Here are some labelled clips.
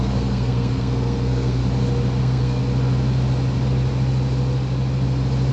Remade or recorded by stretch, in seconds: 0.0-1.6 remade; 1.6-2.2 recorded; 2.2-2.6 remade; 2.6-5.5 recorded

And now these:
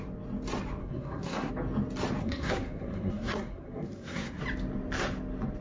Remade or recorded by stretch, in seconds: 0.0-0.8 recorded; 0.8-1.5 remade; 1.5-2.2 recorded; 2.2-4.4 remade; 4.4-5.6 recorded

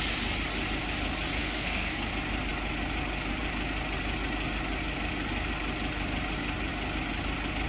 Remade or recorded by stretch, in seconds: 0.0-1.4 recorded; 1.4-2.1 remade; 2.1-7.7 recorded

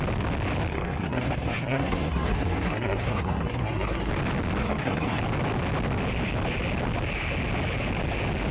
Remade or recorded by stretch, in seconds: 0.0-0.7 recorded; 0.7-4.1 remade; 4.1-4.6 recorded; 4.6-5.2 remade; 5.2-8.5 recorded

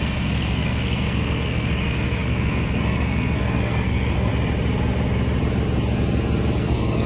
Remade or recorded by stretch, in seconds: 0.0-4.3 remade; 4.3-6.6 recorded; 6.6-7.1 remade